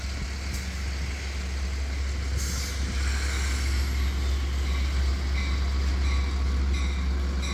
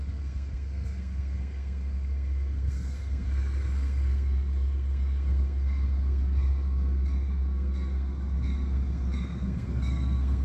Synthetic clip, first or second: second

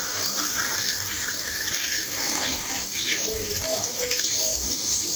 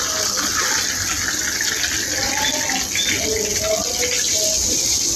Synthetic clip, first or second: first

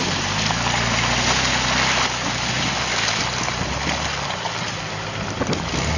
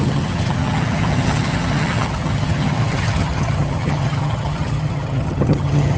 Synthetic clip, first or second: second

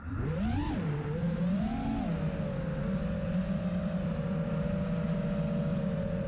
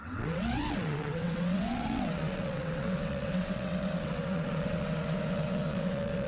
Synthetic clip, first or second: second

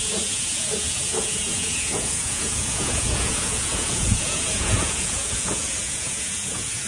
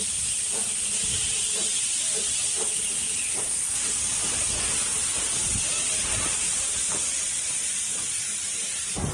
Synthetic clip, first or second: first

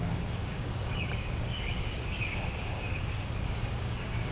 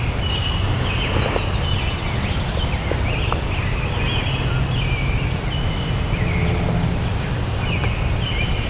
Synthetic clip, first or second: first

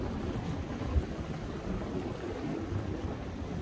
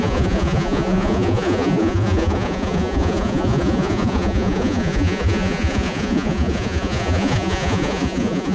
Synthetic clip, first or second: second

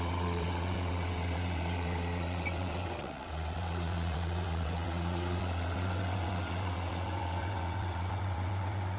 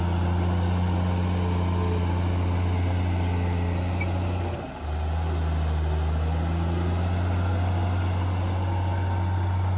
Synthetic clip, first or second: first